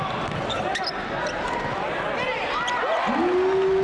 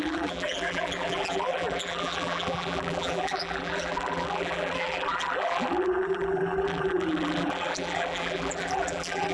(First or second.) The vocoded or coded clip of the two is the second